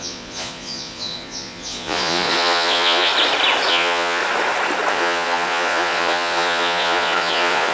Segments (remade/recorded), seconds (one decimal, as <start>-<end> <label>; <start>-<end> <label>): 0.0-3.1 remade; 3.1-3.7 recorded; 3.7-4.2 remade; 4.2-4.9 recorded; 4.9-7.7 remade